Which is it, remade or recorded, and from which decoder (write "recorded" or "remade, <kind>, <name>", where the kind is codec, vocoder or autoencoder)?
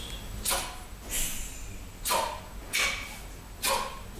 recorded